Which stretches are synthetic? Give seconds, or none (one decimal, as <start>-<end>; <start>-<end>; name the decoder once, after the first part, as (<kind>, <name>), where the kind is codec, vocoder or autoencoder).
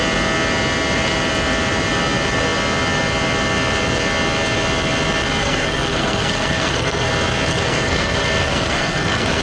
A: 5.4-7.1 (codec, SNAC); 7.5-9.4